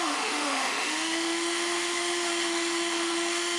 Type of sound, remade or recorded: remade